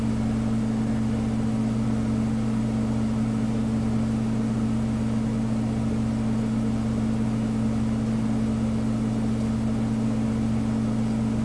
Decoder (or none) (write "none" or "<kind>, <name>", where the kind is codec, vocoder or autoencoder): none